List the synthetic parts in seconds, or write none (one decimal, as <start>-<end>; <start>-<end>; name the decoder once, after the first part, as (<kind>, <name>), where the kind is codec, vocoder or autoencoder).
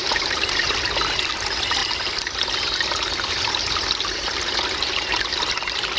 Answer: 0.0-0.7 (vocoder, BigVGAN v2)